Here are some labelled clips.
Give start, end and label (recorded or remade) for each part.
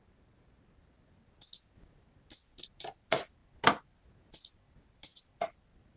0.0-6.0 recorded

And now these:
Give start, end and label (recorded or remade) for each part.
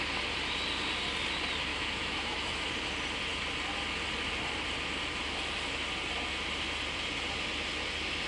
0.0-1.7 recorded; 1.7-2.7 remade; 2.7-8.3 recorded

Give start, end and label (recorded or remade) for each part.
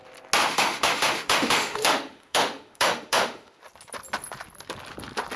0.0-0.4 recorded; 0.4-3.6 remade; 3.6-5.4 recorded